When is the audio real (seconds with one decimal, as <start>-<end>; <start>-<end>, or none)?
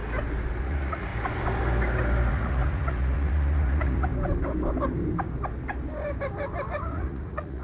0.0-0.6; 1.1-2.3; 4.1-6.9